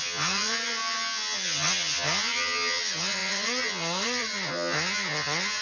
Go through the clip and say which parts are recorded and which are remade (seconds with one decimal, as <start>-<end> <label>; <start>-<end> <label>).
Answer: 0.0-5.6 remade